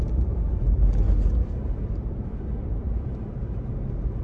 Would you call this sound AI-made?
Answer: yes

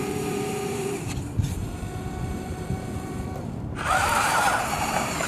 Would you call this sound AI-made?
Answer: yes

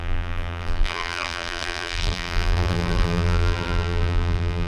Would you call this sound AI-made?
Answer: yes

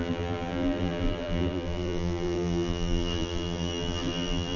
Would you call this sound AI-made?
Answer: yes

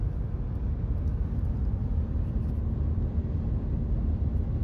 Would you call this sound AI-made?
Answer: no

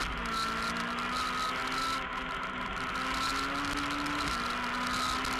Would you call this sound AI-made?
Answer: no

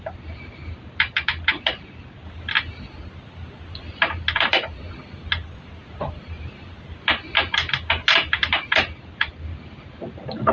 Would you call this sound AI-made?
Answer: yes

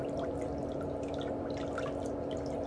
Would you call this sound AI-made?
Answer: no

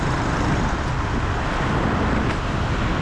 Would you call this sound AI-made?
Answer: no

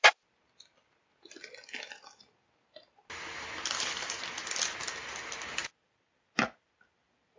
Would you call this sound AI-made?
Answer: no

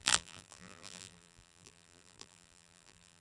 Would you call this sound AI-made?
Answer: yes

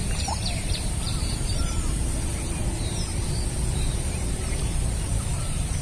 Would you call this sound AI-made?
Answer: yes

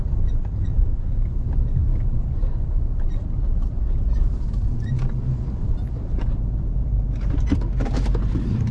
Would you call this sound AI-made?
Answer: yes